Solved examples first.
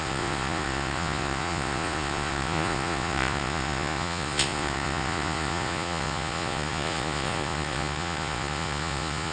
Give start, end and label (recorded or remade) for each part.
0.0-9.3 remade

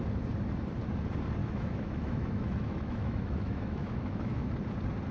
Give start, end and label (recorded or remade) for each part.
0.0-1.4 recorded; 1.4-4.5 remade; 4.5-5.1 recorded

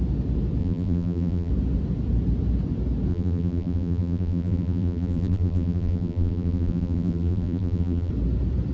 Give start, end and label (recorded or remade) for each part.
0.0-0.6 recorded; 0.6-1.5 remade; 1.5-3.1 recorded; 3.1-8.1 remade; 8.1-8.7 recorded

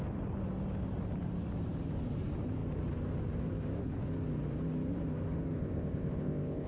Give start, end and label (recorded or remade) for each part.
0.0-5.6 recorded; 5.6-6.7 remade

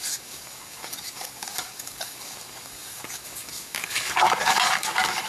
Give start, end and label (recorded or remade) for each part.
0.0-5.3 remade